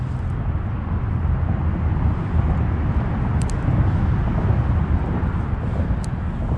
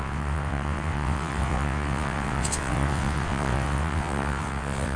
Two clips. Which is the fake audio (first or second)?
second